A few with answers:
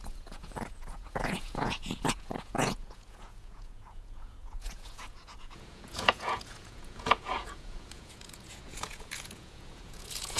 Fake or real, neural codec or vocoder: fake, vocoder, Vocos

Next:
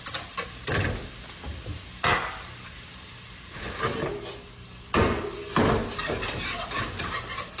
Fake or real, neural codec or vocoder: real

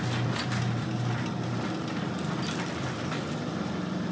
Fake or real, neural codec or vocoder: real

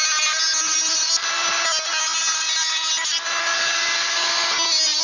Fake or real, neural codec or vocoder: real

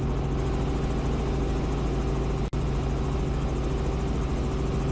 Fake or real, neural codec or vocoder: real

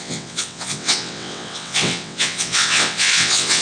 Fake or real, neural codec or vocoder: fake, vocoder, WaveNeXt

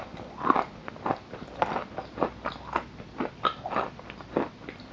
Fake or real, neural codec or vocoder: real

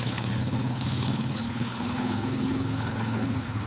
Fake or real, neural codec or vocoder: fake, codec, HILCodec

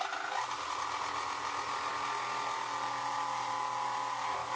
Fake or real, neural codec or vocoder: real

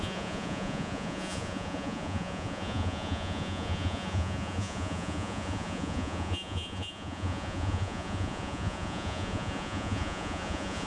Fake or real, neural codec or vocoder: fake, vocoder, Vocos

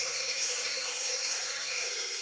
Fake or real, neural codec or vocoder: fake, codec, SNAC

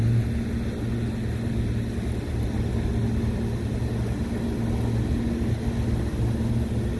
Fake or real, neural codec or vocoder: real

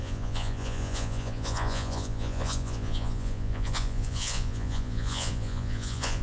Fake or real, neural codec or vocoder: fake, vocoder, Vocos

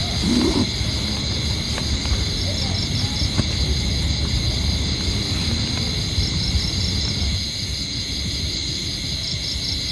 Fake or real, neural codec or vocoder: real